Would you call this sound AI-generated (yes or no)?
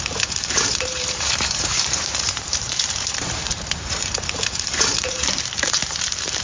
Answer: yes